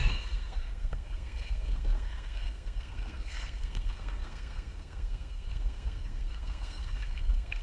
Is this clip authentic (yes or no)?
no